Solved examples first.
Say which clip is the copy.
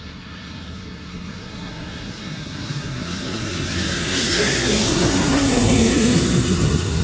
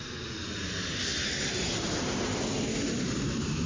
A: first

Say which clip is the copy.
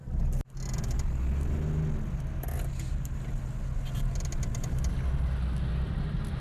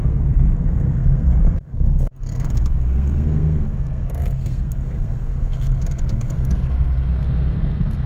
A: second